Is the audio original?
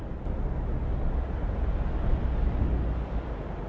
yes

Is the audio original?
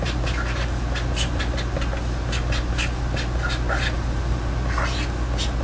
yes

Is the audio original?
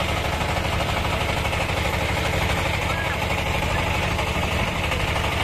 yes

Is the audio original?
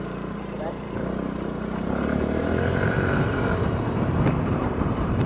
no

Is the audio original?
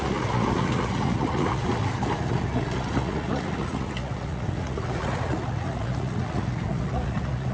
no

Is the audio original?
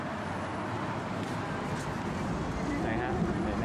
yes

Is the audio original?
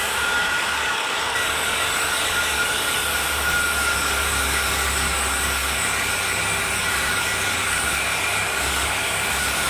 no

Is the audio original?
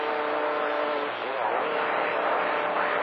yes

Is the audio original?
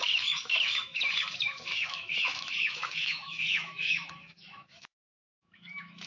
no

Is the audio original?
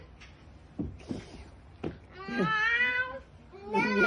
yes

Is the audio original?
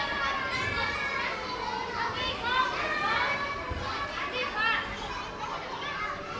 yes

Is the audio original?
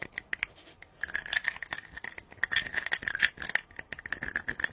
yes